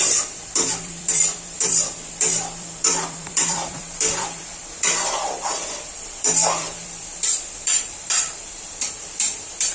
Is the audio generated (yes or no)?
yes